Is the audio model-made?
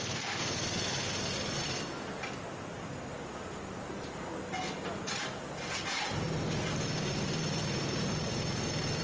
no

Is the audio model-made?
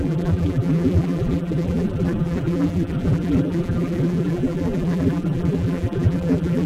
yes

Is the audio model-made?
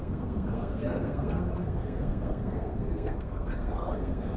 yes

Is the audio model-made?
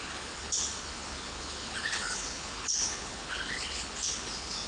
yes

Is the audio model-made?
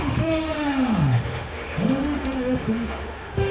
yes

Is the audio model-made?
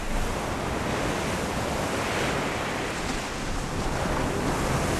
no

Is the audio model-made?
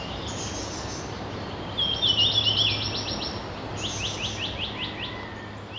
no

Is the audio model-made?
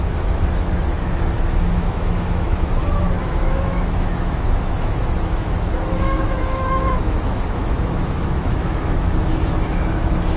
yes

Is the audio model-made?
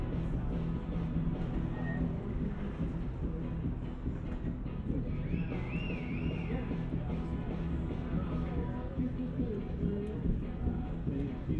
no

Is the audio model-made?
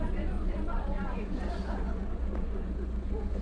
yes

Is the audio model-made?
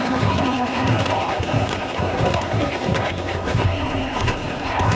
yes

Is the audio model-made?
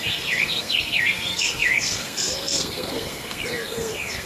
yes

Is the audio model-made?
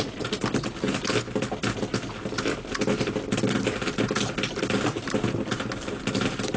no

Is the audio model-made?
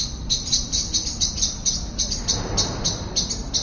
no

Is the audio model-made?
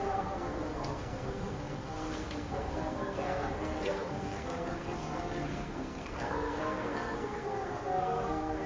yes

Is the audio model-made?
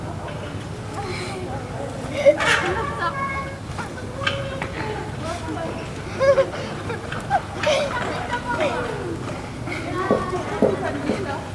no